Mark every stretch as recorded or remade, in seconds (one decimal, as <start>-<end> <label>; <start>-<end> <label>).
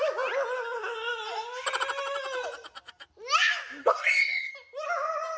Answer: 0.0-3.8 recorded; 3.8-4.5 remade; 4.5-5.4 recorded